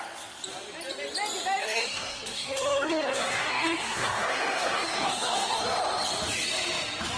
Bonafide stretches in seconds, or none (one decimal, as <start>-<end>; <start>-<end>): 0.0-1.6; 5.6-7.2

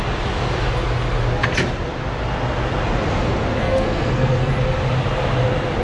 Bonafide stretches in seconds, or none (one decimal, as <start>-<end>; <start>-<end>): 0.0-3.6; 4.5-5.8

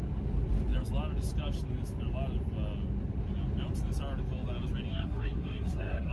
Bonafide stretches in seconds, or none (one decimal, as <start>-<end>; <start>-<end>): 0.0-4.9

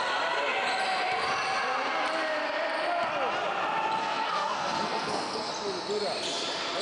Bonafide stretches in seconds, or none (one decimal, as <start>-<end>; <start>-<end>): 0.0-4.0; 5.5-6.8